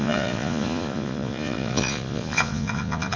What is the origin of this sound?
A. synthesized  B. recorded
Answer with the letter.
A